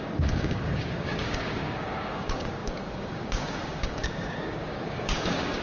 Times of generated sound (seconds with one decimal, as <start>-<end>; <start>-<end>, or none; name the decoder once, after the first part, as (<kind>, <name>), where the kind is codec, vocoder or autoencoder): 0.0-5.6 (codec, DAC)